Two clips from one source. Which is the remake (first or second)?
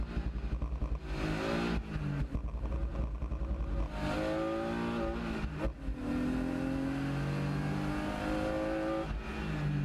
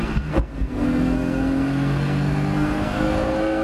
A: second